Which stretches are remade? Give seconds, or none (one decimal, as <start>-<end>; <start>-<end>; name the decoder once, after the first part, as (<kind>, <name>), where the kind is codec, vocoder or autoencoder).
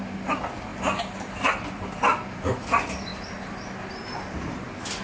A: none